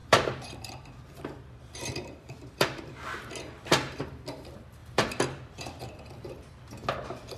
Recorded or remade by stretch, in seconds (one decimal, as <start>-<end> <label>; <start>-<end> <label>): 0.0-2.8 remade; 2.8-4.8 recorded; 4.8-6.4 remade; 6.4-7.4 recorded